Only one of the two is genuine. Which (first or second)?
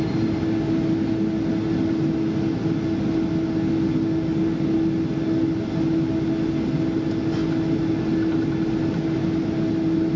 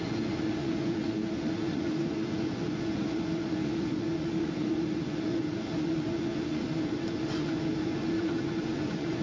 first